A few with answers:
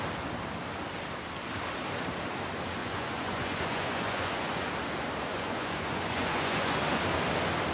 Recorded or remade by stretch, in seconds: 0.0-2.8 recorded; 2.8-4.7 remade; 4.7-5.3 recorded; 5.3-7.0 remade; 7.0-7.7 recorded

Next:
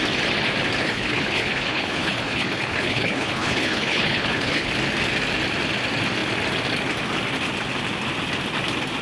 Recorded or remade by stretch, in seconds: 0.0-0.8 recorded; 0.8-4.7 remade; 4.7-9.0 recorded